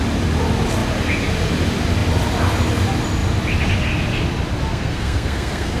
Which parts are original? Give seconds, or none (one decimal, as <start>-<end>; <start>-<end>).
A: 0.0-4.7